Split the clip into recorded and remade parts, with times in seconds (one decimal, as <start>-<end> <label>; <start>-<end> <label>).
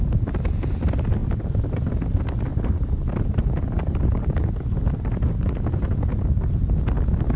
0.0-1.2 recorded; 1.2-1.9 remade; 1.9-2.5 recorded; 2.5-4.5 remade; 4.5-7.4 recorded